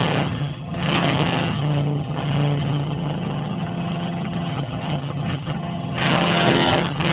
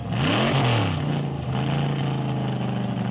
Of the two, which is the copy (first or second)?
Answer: first